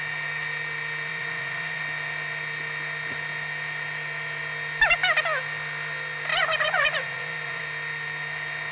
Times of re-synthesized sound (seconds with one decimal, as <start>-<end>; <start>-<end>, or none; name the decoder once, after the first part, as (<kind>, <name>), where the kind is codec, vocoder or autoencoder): 1.1-1.8 (vocoder, Vocos); 6.3-7.6